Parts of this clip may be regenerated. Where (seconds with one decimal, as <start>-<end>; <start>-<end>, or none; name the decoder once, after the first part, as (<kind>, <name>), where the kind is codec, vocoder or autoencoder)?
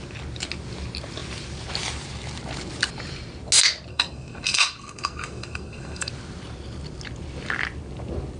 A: 3.9-6.1 (codec, SNAC)